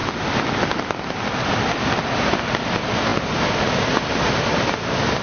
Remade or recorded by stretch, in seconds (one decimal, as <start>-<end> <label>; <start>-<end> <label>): 0.0-5.2 recorded